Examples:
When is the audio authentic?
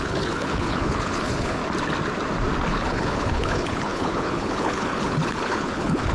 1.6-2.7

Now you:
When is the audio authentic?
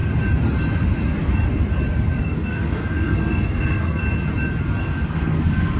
0.0-2.2; 4.0-4.8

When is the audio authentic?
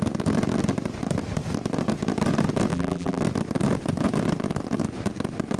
0.0-2.7; 3.2-5.6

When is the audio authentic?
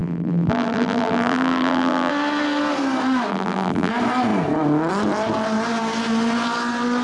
2.1-3.3; 3.9-7.0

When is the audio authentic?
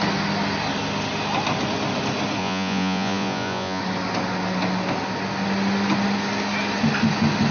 0.0-2.4; 3.8-7.5